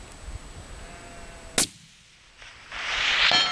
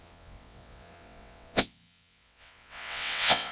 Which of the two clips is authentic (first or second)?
first